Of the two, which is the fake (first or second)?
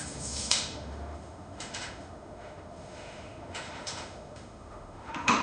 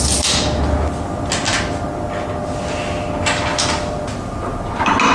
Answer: first